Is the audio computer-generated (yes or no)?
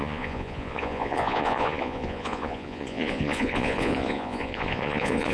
yes